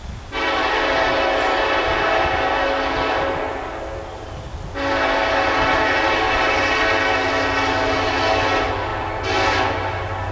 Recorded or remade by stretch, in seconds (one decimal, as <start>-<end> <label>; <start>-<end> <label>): 0.0-10.3 recorded